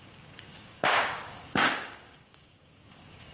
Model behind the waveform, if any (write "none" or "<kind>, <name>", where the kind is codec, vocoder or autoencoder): codec, DAC